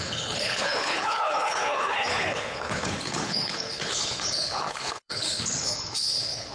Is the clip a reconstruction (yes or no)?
yes